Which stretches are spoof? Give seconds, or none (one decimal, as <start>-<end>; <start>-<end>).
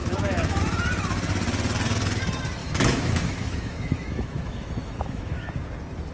0.0-0.6; 2.6-5.5